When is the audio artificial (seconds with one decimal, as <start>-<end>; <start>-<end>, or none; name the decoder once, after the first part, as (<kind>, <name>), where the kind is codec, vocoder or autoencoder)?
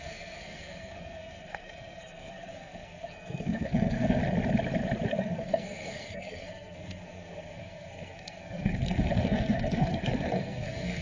0.0-4.2 (codec, SNAC); 5.2-11.0